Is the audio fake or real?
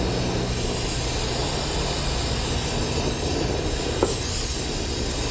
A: real